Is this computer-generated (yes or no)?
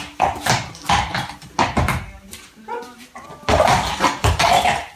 no